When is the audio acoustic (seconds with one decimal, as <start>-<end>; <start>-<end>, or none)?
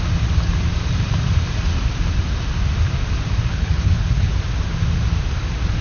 0.0-3.5; 4.3-5.8